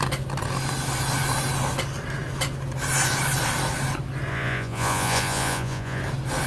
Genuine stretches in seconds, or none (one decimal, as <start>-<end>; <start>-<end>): 0.0-4.3; 6.0-6.5